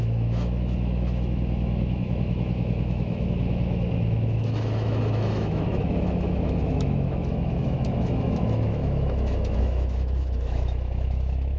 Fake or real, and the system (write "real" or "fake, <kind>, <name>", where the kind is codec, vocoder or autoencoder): fake, autoencoder, DAC-VAE